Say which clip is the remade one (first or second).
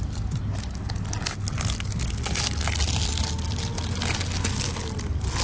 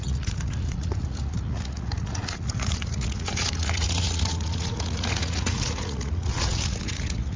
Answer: second